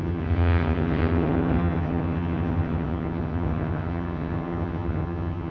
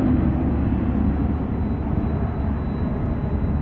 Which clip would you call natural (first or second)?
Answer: second